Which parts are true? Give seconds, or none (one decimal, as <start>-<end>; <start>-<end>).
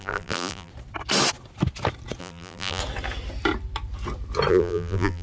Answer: 0.7-2.2; 2.8-4.5